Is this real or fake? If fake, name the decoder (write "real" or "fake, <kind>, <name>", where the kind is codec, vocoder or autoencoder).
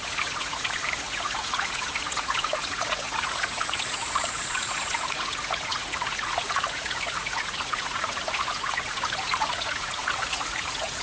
fake, vocoder, Vocos